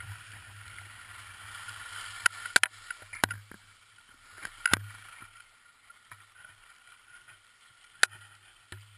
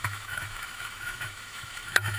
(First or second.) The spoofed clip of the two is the second